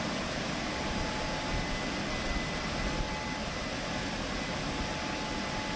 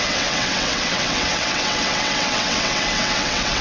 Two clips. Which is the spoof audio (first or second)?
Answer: second